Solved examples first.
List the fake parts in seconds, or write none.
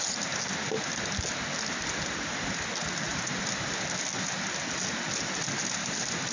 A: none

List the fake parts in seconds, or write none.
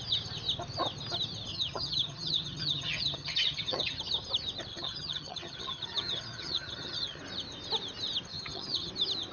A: 1.5-4.0 (vocoder, HiFi-GAN); 4.7-7.2; 8.3-8.9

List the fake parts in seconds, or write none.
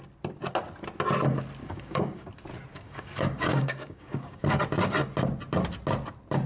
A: 1.6-2.2 (codec, DAC); 2.7-4.6